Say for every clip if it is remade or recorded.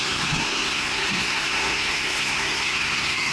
remade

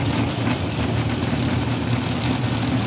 recorded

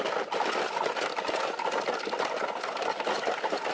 recorded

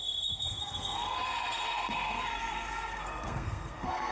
remade